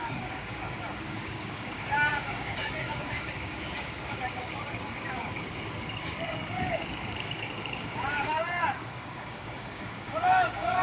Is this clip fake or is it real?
fake